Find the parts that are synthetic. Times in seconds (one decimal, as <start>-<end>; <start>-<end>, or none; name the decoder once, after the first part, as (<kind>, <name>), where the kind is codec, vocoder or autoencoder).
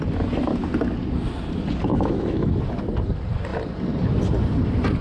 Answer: 1.9-2.6 (autoencoder, DAC-VAE)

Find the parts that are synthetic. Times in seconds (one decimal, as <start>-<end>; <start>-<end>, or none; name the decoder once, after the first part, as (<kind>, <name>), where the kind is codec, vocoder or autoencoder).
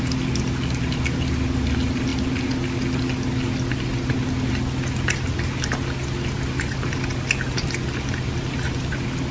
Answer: none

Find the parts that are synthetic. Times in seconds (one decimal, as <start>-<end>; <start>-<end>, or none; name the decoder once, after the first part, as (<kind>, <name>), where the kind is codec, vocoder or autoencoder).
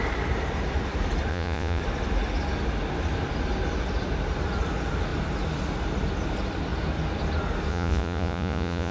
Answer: 1.3-1.8 (vocoder, Vocos); 7.7-8.9